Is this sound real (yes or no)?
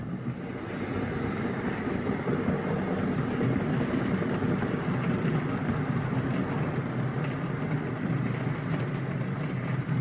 yes